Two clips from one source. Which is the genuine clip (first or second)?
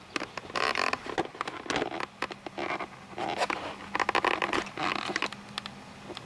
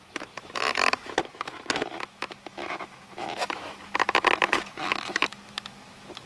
first